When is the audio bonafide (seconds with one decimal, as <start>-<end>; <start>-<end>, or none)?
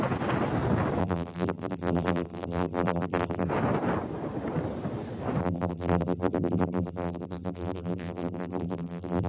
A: 0.0-1.0; 3.5-5.4